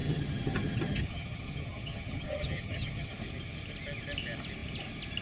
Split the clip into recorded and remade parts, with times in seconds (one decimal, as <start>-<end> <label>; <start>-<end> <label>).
0.0-3.1 remade; 3.1-5.2 recorded